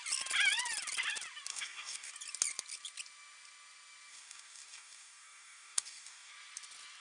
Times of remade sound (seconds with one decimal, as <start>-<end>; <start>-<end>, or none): 1.5-2.1; 4.1-6.3